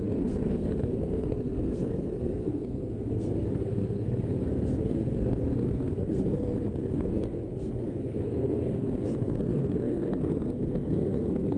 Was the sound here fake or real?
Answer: fake